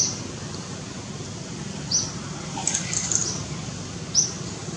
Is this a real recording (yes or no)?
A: yes